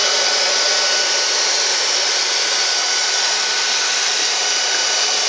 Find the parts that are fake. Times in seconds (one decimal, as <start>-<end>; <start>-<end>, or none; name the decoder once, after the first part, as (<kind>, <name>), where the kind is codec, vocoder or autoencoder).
none